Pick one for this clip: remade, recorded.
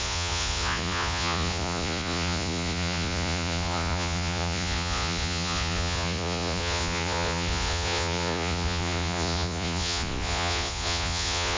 remade